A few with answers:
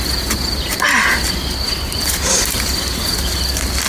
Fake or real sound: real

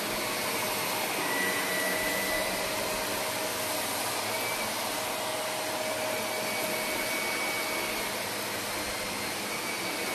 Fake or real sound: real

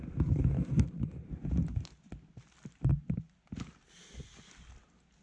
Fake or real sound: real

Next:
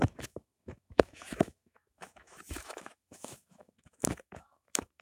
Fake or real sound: fake